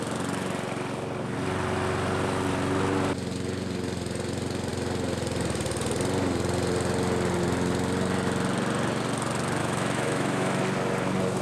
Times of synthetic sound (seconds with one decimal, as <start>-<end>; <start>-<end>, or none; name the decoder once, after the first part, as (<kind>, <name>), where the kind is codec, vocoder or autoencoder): 9.6-10.6 (autoencoder, DAC-VAE)